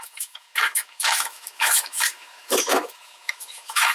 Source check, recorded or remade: remade